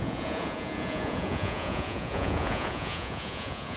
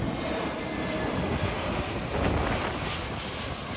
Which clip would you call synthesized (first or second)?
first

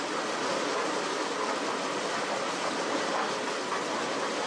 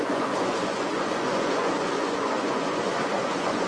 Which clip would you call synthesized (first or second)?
second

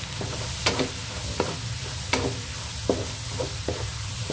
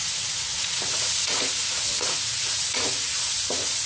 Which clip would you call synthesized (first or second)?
second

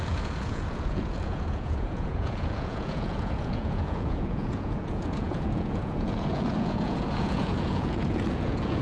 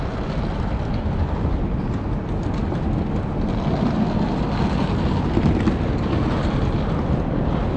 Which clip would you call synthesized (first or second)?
first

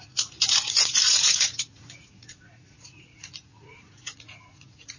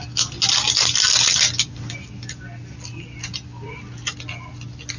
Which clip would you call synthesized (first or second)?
first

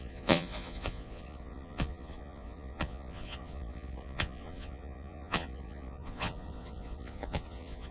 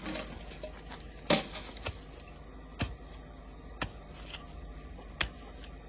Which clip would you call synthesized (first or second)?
first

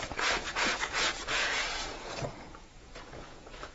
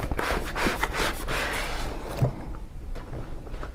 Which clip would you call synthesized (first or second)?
first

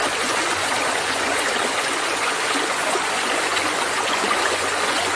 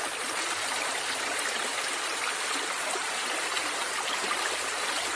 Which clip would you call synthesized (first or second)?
first